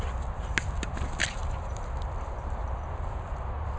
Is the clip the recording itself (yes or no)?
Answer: yes